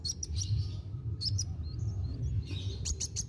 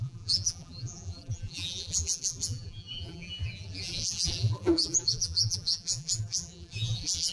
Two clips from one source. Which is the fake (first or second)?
second